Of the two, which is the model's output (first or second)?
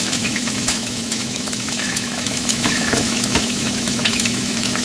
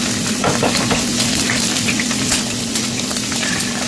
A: first